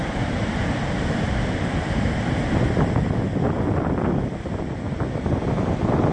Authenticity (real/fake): real